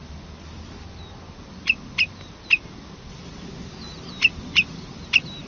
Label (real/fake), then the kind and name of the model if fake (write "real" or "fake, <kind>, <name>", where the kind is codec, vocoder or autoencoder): real